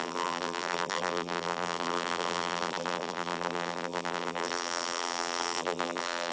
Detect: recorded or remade remade